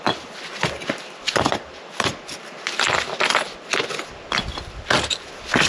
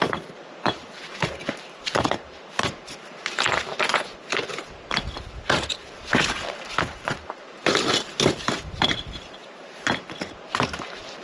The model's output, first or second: second